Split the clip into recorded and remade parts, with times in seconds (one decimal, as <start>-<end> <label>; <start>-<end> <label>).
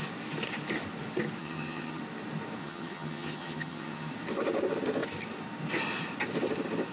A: 0.0-1.4 recorded; 1.4-2.0 remade; 2.0-2.6 recorded; 2.6-4.1 remade; 4.1-6.9 recorded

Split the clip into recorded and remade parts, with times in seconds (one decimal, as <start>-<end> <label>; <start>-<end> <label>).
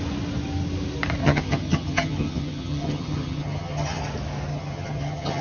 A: 0.0-1.2 recorded; 1.2-4.0 remade; 4.0-4.5 recorded; 4.5-5.4 remade